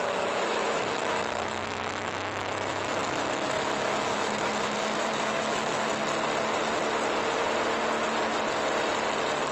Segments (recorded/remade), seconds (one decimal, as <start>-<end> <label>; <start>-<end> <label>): 0.0-6.0 remade; 6.0-9.5 recorded